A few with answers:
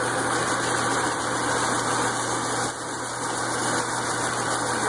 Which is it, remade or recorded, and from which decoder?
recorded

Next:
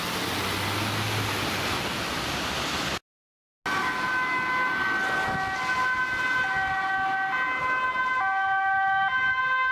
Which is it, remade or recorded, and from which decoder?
recorded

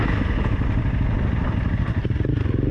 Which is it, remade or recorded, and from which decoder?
recorded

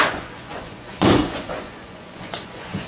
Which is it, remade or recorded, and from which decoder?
remade, vocoder, Vocos